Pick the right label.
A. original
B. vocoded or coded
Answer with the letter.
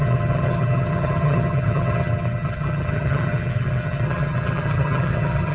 B